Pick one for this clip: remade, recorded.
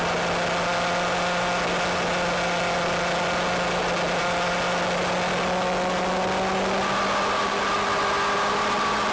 recorded